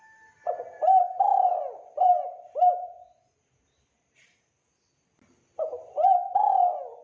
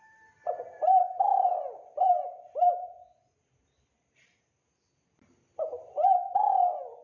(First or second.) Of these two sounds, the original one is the first